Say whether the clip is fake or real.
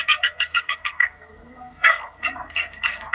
fake